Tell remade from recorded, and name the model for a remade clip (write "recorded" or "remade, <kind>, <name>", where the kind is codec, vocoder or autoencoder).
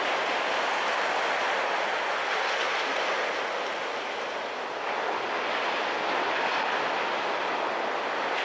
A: recorded